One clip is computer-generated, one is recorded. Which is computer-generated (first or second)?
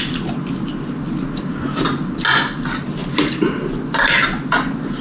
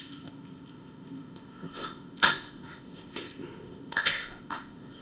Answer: second